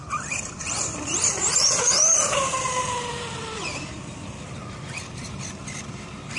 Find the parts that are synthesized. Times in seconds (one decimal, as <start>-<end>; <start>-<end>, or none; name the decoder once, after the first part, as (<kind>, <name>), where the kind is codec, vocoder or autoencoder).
0.0-3.8 (vocoder, BigVGAN v2)